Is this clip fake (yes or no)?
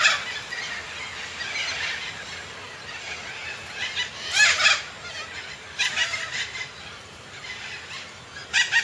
no